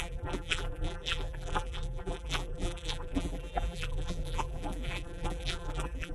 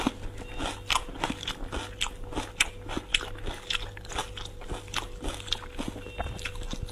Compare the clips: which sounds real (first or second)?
second